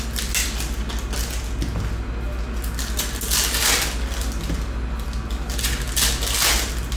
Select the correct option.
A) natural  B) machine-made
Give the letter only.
A